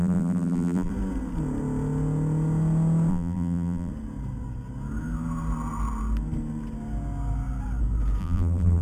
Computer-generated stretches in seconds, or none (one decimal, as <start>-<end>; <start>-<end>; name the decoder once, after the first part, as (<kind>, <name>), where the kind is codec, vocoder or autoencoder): 0.0-0.9 (vocoder, BigVGAN v2); 3.1-3.9; 8.2-8.8